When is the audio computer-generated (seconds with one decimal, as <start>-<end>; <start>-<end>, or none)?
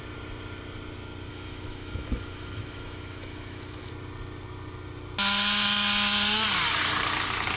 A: 1.3-3.9